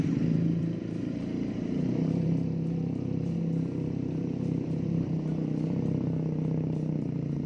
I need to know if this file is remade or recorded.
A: remade